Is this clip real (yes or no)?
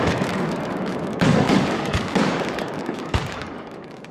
no